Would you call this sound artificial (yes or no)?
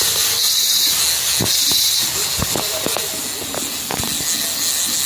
no